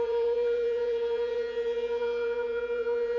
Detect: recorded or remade remade